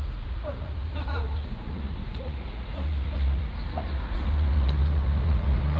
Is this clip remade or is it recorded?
remade